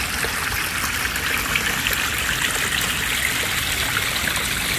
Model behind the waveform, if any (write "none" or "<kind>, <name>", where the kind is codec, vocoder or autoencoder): none